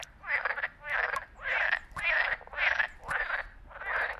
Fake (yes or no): yes